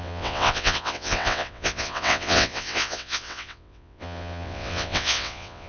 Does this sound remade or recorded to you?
remade